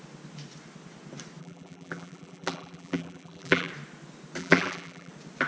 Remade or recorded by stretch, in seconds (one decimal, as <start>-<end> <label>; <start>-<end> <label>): 0.0-1.4 recorded; 1.4-3.7 remade; 3.7-4.4 recorded; 4.4-5.1 remade; 5.1-5.5 recorded